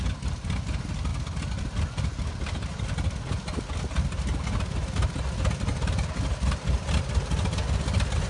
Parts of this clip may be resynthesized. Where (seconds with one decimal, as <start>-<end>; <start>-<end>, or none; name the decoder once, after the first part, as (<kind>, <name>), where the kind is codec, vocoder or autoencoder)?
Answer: none